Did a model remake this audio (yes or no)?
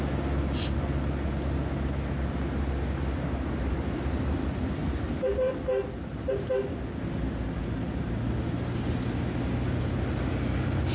no